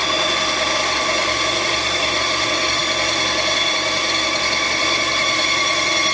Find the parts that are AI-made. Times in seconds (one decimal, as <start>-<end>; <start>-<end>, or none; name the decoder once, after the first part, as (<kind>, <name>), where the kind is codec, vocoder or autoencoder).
none